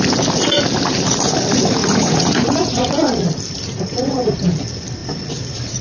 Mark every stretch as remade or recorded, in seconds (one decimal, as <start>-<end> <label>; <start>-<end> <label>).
0.0-1.8 recorded; 1.8-3.2 remade; 3.2-3.7 recorded; 3.7-4.4 remade; 4.4-5.8 recorded